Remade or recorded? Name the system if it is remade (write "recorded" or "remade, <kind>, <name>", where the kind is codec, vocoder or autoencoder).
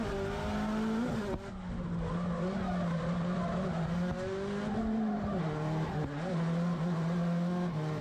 recorded